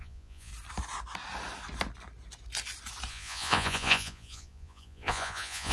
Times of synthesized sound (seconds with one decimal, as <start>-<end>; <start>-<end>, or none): 0.0-0.5; 3.1-5.7